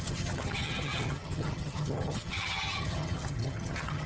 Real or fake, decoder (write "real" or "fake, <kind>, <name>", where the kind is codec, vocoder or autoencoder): fake, vocoder, HiFi-GAN